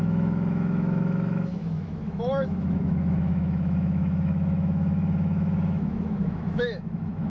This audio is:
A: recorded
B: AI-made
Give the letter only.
B